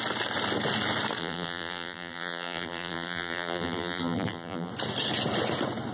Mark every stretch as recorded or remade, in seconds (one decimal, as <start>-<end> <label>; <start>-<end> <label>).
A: 0.0-1.2 recorded; 1.2-4.7 remade; 4.7-5.9 recorded